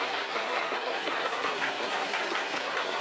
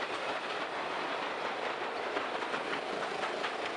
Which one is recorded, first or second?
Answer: second